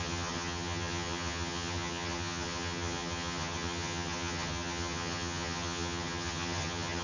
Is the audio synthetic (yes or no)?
yes